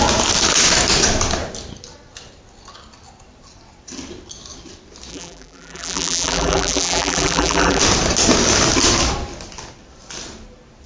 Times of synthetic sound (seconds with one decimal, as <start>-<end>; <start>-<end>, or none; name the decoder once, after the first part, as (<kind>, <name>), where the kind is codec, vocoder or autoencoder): 5.1-7.8 (vocoder, BigVGAN v2)